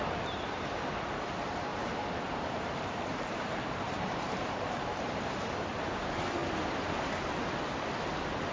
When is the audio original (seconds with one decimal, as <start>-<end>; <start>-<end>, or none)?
0.0-1.7; 5.3-8.5